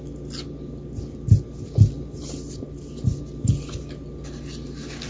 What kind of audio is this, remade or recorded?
recorded